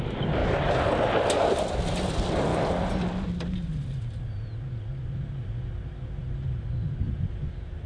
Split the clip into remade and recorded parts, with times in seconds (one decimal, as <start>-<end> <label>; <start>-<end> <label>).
0.0-7.9 recorded